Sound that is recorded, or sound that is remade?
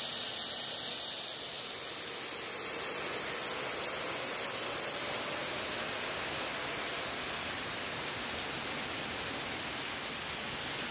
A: recorded